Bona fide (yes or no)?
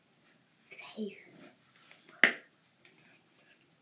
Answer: yes